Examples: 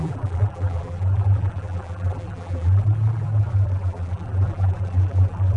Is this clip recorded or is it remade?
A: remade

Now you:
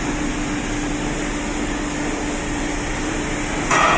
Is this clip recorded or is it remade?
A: recorded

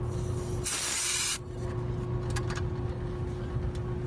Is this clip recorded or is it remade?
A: recorded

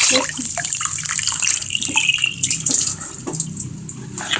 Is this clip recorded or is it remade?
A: remade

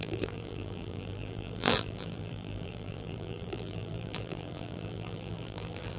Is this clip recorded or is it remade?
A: remade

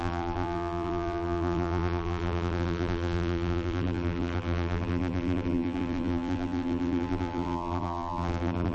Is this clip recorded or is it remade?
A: remade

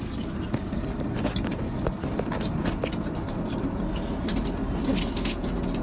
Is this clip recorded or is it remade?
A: recorded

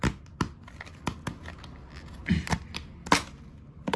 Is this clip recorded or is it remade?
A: recorded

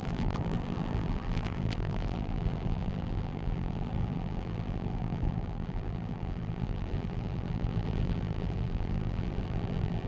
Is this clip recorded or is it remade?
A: remade